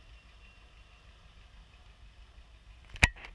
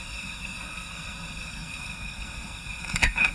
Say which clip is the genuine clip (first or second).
first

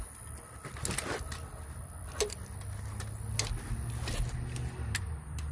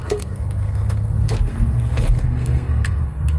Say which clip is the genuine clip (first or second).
first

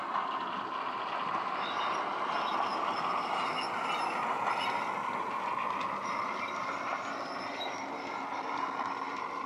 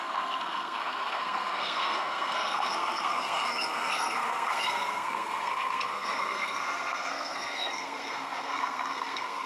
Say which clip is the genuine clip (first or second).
first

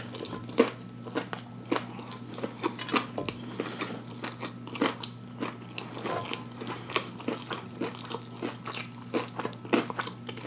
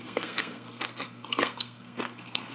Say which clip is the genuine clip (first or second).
first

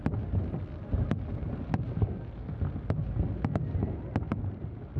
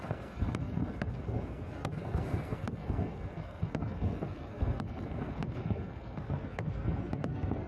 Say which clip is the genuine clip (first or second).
first